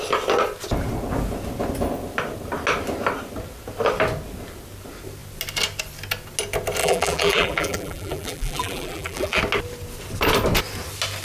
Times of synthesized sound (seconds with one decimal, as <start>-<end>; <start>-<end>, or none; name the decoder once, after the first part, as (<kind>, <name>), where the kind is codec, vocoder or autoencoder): 6.8-9.4 (vocoder, BigVGAN v2)